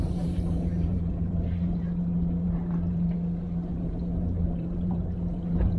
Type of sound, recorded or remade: remade